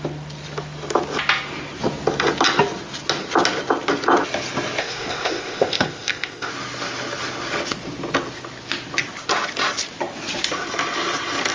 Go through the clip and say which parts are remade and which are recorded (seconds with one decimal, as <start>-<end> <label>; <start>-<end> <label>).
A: 0.0-4.8 recorded; 4.8-6.5 remade; 6.5-11.5 recorded